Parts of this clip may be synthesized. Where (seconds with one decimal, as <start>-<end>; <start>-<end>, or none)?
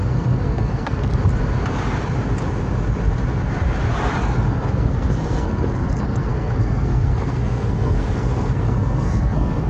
0.0-1.1; 4.7-9.7